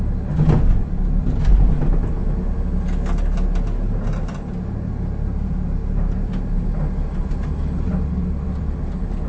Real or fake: real